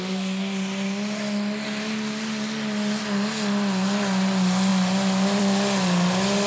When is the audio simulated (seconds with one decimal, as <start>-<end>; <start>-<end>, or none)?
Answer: none

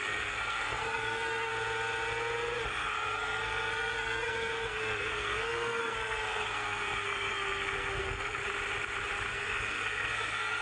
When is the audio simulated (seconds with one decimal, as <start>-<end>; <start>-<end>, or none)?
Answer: 0.0-1.5; 2.7-8.4; 9.3-10.6